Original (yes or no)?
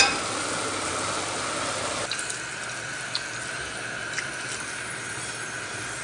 yes